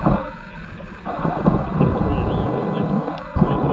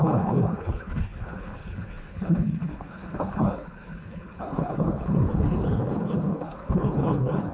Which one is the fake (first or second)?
second